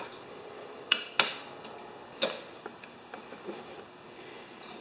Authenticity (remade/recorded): recorded